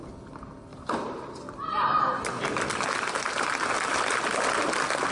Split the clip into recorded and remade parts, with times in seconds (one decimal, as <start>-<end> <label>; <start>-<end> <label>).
0.0-5.1 recorded